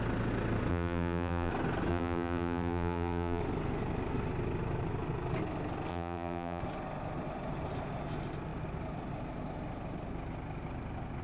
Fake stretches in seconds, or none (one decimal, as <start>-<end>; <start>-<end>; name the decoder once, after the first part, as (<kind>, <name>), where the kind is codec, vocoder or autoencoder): 0.7-1.5 (vocoder, BigVGAN v2); 1.9-3.4; 5.9-6.6